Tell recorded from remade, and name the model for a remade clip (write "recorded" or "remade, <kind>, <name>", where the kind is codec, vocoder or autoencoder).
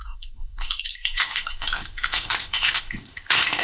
remade, codec, ZipCodec